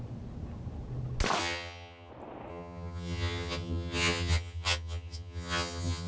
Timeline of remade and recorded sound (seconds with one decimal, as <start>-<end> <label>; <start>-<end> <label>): 0.0-1.4 recorded; 1.4-2.1 remade; 2.1-2.5 recorded; 2.5-6.1 remade

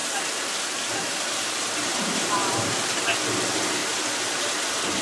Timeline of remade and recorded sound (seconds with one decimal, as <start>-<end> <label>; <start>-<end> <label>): 0.0-3.0 remade; 3.0-5.0 recorded

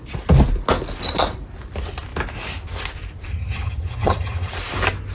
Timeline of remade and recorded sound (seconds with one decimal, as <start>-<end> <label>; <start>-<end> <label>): 0.0-3.3 recorded; 3.3-4.5 remade; 4.5-5.1 recorded

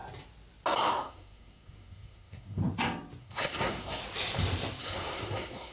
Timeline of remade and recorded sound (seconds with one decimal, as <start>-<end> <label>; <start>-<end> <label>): 0.0-0.9 recorded; 0.9-2.6 remade; 2.6-3.2 recorded; 3.2-4.0 remade; 4.0-4.8 recorded; 4.8-5.7 remade

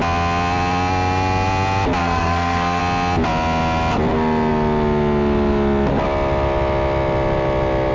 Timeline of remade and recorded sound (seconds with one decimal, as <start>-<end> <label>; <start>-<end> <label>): 0.0-2.0 recorded; 2.0-2.8 remade; 2.8-7.9 recorded